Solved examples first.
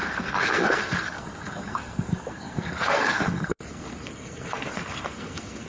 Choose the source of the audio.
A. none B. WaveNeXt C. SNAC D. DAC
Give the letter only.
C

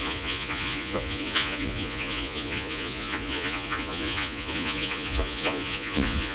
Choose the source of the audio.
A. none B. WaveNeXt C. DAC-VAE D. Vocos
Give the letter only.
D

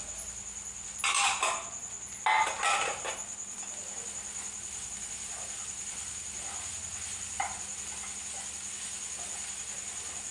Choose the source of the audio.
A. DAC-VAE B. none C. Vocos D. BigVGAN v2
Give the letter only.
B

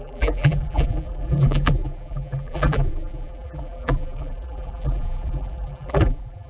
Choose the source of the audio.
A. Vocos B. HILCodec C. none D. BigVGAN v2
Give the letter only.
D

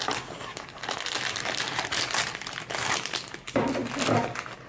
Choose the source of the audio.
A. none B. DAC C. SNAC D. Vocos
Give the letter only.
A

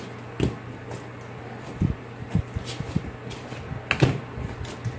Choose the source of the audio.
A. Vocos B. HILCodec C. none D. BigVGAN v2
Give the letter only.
C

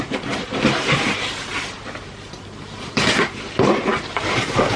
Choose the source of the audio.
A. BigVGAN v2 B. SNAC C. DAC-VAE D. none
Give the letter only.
A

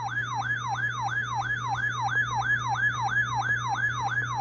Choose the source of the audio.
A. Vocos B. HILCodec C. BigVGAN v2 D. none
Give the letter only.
D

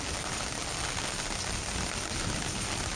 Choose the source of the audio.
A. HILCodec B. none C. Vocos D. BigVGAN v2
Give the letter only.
B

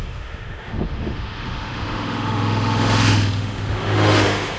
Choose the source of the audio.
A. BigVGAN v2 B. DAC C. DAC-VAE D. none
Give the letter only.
C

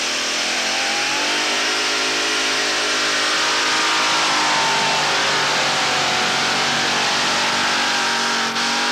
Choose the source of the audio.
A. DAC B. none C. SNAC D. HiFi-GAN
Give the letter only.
B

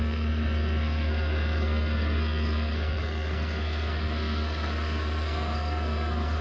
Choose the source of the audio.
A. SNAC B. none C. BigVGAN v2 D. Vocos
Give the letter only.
A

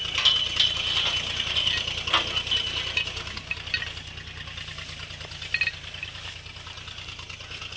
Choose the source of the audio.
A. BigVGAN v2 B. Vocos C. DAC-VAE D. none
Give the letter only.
D